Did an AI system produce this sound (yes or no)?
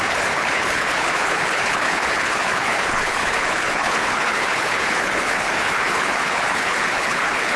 yes